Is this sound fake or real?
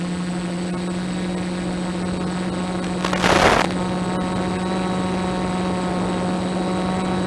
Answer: real